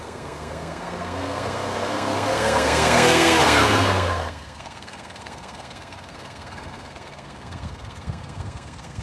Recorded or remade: remade